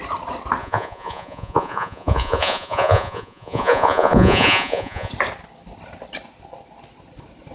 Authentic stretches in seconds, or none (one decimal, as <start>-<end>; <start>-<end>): 0.0-0.6; 5.1-7.5